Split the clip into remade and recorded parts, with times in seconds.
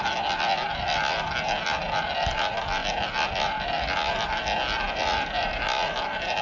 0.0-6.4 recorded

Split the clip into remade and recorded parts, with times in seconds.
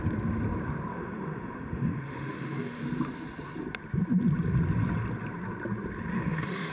0.0-0.9 recorded; 0.9-2.8 remade; 2.8-6.1 recorded; 6.1-6.7 remade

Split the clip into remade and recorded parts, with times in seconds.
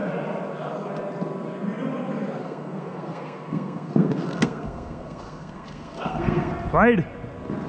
0.0-2.4 recorded; 2.4-6.5 remade; 6.5-7.7 recorded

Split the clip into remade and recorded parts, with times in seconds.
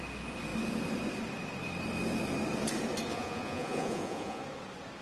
0.0-3.1 recorded; 3.1-4.4 remade; 4.4-5.0 recorded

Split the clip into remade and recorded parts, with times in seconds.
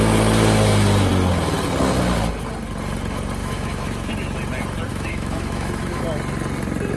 0.0-3.4 recorded; 3.4-4.1 remade; 4.1-4.9 recorded; 4.9-6.0 remade; 6.0-7.0 recorded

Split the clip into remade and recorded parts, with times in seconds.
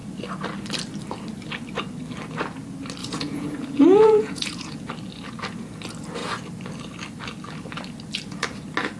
0.0-3.0 recorded; 3.0-4.9 remade; 4.9-9.0 recorded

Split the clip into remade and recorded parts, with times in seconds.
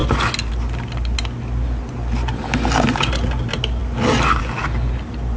0.0-5.4 recorded